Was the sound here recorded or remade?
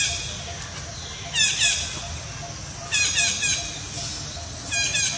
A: recorded